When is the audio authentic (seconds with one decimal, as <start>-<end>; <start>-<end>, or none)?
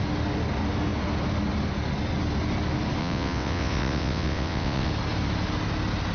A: 0.0-3.0; 4.9-6.1